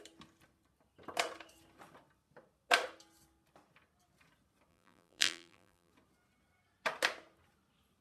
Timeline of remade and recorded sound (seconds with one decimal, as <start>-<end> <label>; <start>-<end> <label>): 0.0-4.7 recorded; 4.7-5.9 remade; 5.9-8.0 recorded